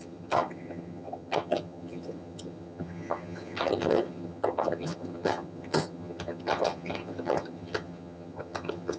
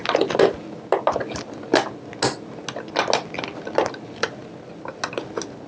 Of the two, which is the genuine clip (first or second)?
second